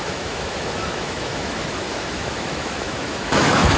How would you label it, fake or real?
fake